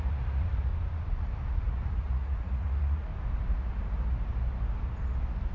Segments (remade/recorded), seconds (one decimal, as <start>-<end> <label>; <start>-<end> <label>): 0.0-0.7 remade; 0.7-1.2 recorded; 1.2-3.1 remade; 3.1-5.5 recorded